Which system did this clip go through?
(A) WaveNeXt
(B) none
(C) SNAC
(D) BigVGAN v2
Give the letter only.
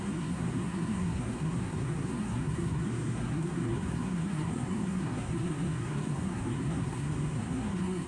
C